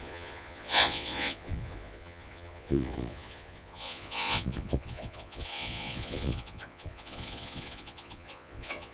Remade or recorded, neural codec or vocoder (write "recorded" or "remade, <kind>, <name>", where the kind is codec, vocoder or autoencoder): remade, vocoder, Vocos